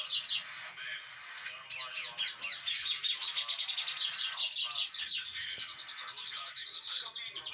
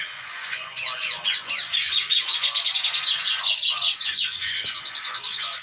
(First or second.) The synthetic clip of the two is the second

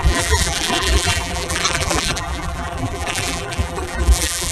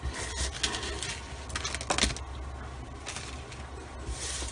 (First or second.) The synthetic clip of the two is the first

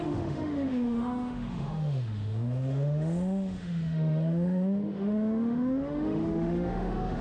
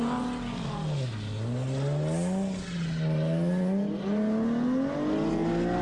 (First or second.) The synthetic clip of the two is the first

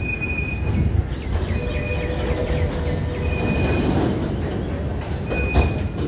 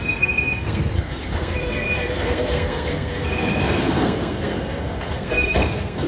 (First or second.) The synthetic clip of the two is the second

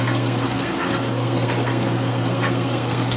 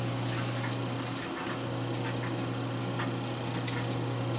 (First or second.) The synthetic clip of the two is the first